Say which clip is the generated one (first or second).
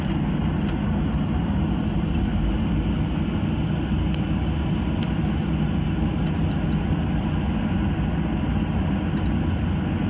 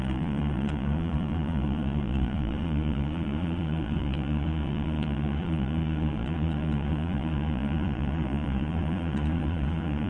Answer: second